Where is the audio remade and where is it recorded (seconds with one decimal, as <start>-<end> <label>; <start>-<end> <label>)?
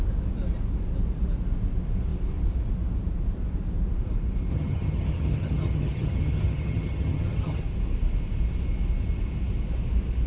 0.0-4.5 recorded; 4.5-7.6 remade; 7.6-10.3 recorded